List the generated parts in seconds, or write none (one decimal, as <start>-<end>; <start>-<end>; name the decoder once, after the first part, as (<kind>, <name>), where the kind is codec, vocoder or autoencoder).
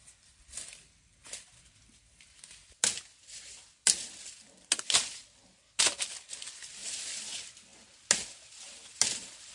none